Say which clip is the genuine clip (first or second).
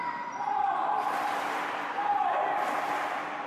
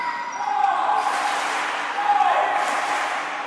second